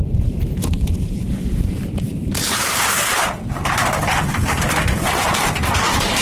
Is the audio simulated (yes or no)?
yes